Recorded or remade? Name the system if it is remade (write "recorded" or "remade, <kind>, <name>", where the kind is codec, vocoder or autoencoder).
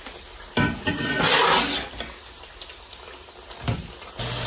recorded